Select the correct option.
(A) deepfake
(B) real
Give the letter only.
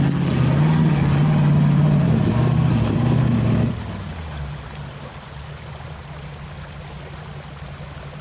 B